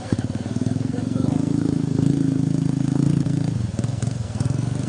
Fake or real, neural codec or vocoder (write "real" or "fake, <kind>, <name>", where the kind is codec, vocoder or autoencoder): fake, codec, SNAC